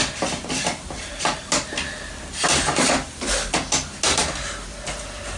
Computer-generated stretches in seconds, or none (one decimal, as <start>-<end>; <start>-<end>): none